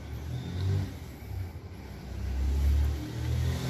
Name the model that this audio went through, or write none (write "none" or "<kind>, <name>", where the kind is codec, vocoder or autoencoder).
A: none